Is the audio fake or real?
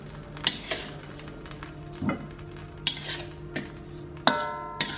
real